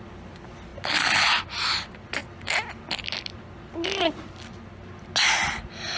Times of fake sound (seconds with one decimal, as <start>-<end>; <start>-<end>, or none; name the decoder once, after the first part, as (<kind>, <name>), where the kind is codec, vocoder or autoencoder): none